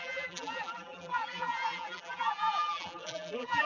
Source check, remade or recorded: remade